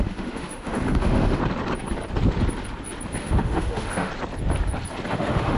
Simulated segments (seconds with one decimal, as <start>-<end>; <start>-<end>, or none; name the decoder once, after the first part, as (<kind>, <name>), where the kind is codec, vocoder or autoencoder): 0.0-1.4 (autoencoder, DAC-VAE); 3.2-4.1; 5.1-5.6